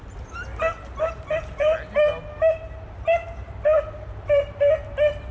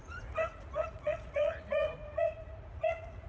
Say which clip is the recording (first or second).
first